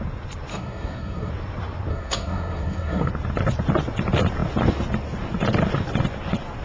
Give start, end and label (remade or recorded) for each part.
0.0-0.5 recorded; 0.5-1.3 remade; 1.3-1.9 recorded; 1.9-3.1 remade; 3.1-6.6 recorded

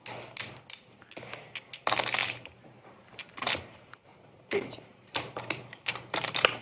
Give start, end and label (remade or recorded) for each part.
0.0-2.2 recorded; 2.2-6.6 remade

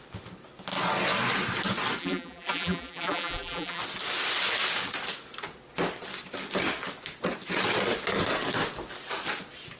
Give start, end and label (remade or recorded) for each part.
0.0-2.0 recorded; 2.0-3.8 remade; 3.8-9.8 recorded

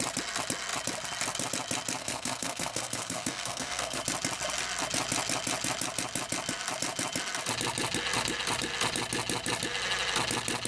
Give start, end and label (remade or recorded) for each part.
0.0-2.0 recorded; 2.0-4.0 remade; 4.0-10.7 recorded

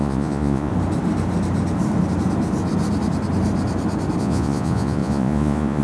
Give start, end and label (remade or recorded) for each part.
0.0-0.7 remade; 0.7-4.2 recorded; 4.2-5.8 remade